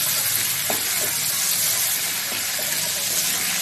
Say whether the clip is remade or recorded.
recorded